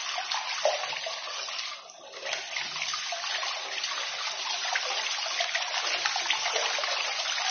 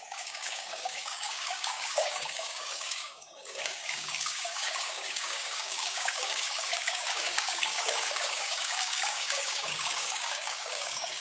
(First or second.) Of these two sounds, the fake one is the second